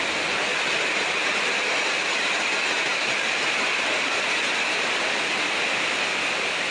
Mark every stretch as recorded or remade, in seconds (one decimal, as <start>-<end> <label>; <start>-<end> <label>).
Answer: 0.0-6.7 recorded